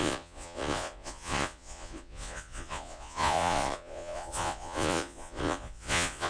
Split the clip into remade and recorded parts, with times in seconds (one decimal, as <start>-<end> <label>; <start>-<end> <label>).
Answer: 0.0-6.3 remade